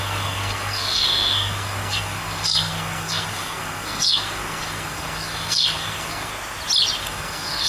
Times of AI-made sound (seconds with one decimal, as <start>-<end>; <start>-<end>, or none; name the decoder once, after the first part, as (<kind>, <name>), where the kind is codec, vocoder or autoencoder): 0.0-6.3 (codec, SNAC); 7.0-7.7